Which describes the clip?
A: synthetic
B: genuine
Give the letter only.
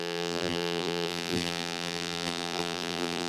A